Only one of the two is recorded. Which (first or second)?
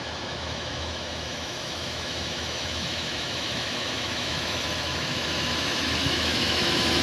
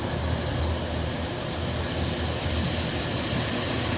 second